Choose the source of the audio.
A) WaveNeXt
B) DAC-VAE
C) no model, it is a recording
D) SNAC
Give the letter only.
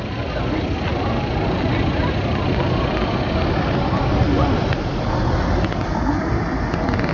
C